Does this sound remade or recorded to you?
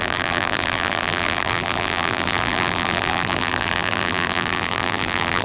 remade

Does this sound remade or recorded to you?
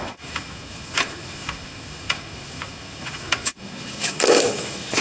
remade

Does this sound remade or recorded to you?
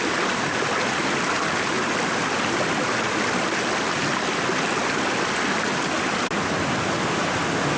recorded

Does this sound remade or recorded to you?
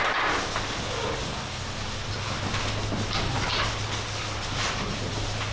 recorded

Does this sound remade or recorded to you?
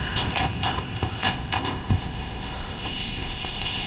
remade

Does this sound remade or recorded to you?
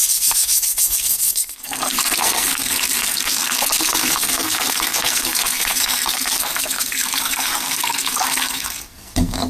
remade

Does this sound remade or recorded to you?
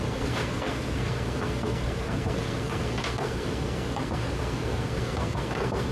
remade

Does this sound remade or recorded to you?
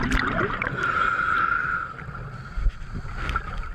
recorded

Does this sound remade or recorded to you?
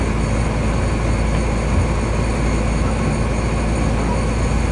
recorded